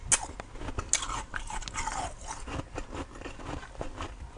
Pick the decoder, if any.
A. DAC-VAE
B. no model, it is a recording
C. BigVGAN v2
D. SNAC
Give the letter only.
B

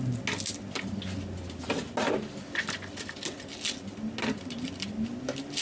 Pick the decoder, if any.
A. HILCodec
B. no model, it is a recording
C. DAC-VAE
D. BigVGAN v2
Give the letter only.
B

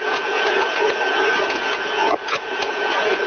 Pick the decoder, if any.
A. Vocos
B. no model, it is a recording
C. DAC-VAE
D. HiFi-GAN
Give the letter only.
A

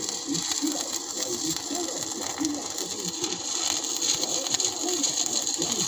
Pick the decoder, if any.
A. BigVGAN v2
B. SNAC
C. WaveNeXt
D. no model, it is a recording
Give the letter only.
A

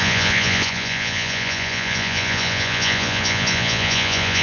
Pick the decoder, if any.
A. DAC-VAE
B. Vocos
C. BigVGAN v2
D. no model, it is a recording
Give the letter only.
B